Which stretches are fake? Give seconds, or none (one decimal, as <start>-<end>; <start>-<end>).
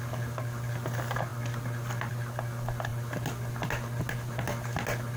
none